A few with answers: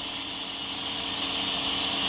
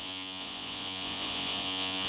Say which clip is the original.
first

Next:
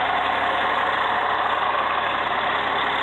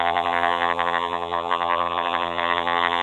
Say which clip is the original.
first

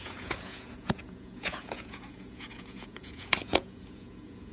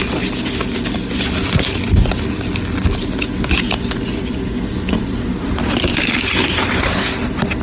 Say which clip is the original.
second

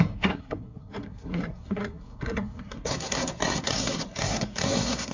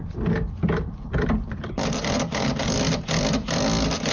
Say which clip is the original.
second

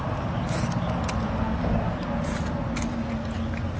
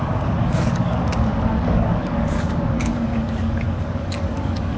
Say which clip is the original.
first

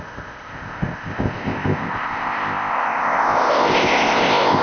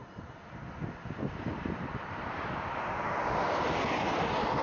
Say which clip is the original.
second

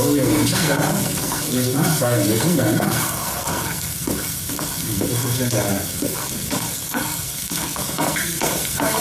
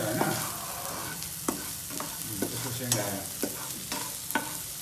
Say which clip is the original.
second